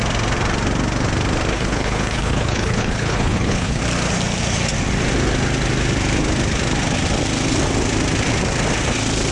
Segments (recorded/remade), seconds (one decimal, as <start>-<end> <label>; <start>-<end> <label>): 0.0-1.5 recorded; 1.5-3.8 remade; 3.8-9.3 recorded